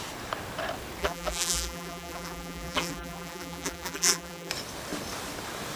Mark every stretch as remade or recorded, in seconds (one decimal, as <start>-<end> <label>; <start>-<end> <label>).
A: 0.0-1.0 recorded; 1.0-4.5 remade; 4.5-5.8 recorded